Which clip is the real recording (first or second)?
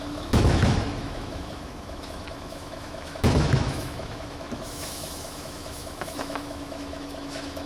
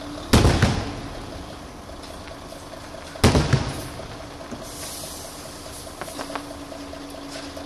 second